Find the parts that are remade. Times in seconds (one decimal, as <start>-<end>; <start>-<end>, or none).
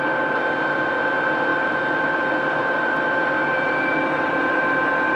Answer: 1.5-4.6